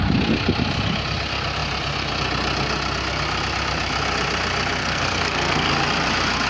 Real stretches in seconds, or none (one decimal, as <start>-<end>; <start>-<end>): 0.0-4.8; 5.7-6.5

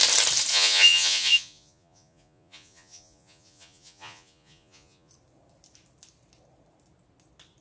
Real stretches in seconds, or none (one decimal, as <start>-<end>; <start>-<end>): 0.0-0.5; 5.1-7.6

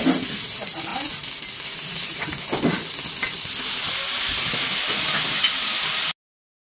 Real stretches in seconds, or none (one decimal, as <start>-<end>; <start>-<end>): 0.0-6.6

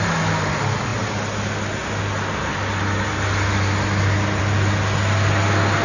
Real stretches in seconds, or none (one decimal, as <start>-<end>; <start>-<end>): 0.0-5.8

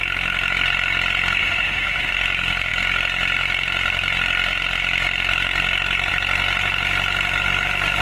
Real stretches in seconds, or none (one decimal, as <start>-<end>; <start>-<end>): 0.0-1.4; 2.1-8.0

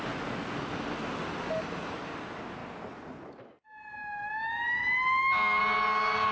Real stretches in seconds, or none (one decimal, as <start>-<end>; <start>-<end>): 0.0-6.3